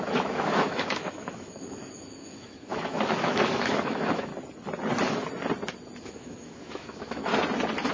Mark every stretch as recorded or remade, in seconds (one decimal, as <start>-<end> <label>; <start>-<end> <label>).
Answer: 0.0-4.3 remade; 4.3-6.0 recorded; 6.0-7.3 remade; 7.3-7.9 recorded